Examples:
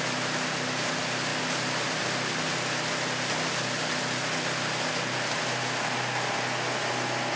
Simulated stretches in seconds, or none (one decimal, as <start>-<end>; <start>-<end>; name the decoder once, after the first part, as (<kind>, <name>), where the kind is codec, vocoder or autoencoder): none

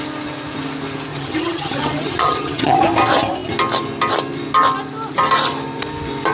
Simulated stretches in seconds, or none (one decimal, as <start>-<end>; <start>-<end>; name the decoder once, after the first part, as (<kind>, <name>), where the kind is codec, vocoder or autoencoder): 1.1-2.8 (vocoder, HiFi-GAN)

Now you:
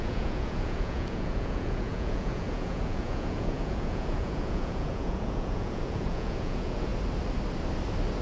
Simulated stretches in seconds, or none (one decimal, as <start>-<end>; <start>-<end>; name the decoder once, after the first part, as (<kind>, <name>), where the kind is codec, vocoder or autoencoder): 0.0-6.9 (vocoder, Vocos)